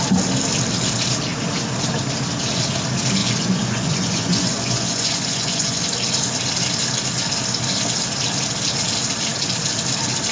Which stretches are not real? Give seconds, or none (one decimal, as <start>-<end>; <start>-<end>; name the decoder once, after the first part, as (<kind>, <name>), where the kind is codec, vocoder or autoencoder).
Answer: 3.2-5.8 (vocoder, Vocos)